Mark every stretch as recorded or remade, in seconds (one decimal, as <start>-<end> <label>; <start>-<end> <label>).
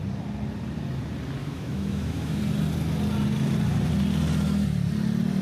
0.0-1.4 recorded; 1.4-2.4 remade; 2.4-5.4 recorded